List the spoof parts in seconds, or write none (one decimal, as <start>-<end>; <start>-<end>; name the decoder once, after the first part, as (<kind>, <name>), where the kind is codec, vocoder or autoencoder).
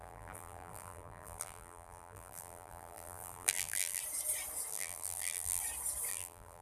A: 0.0-4.0 (vocoder, BigVGAN v2); 4.7-5.6; 6.1-6.6